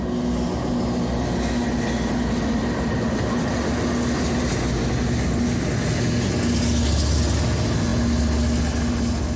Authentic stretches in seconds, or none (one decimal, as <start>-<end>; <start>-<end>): 0.0-9.4